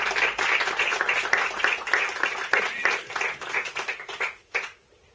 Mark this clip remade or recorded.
recorded